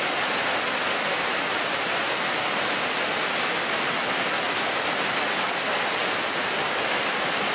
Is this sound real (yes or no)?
yes